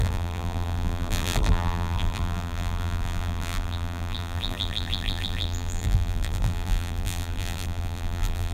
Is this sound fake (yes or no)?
yes